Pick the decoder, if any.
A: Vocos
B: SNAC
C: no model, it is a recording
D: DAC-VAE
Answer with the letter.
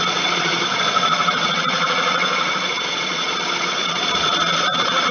A